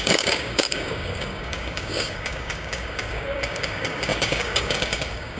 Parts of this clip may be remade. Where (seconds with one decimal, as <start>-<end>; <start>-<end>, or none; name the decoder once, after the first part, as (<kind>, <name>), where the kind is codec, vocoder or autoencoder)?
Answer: 0.0-5.4 (codec, DAC)